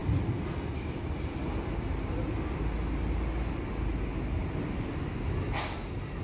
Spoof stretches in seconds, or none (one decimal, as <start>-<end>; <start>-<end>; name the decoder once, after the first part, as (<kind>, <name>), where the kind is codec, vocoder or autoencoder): 4.4-4.9 (vocoder, BigVGAN v2)